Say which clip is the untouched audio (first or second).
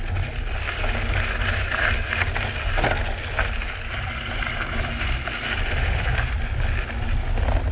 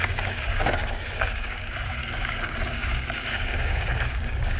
first